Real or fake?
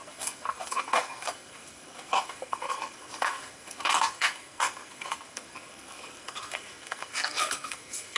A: fake